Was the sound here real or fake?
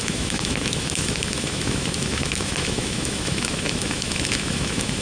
fake